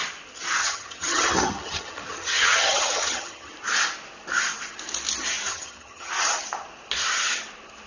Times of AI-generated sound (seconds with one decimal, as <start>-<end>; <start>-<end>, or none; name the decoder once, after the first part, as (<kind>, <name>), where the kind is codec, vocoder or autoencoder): 0.6-3.5 (vocoder, HiFi-GAN); 5.5-6.1